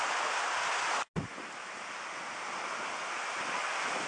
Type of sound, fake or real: real